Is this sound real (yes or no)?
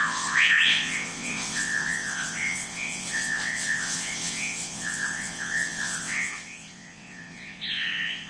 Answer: no